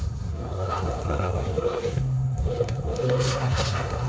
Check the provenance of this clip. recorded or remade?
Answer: remade